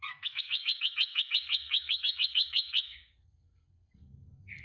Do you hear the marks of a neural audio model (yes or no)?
yes